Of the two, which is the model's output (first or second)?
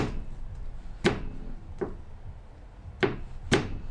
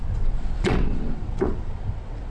second